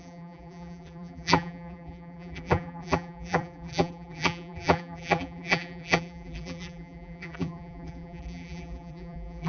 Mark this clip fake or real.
fake